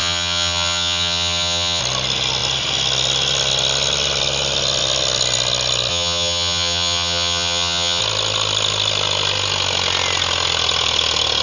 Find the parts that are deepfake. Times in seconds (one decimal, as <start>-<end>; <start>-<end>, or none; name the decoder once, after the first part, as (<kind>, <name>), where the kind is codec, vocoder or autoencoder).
0.0-1.8 (vocoder, HiFi-GAN); 5.9-8.0